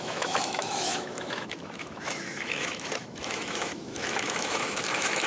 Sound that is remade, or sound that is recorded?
remade